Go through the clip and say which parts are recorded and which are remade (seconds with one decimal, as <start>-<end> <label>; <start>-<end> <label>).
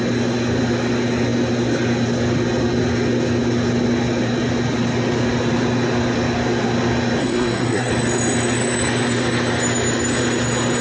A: 0.0-7.2 recorded; 7.2-7.9 remade; 7.9-10.8 recorded